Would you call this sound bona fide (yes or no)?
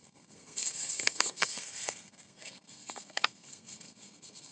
no